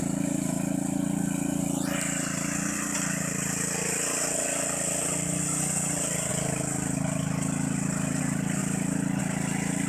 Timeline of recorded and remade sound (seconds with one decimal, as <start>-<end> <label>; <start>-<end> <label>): 0.0-9.9 recorded